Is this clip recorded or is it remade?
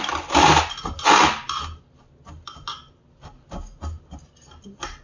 recorded